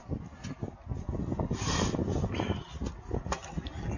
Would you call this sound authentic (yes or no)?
yes